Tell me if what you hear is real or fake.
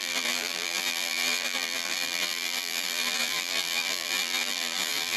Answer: fake